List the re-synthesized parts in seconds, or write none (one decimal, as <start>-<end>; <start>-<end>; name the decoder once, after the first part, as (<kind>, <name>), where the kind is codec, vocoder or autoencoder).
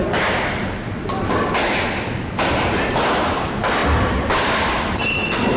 none